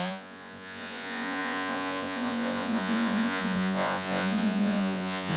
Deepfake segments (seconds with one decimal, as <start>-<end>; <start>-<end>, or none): 0.0-5.4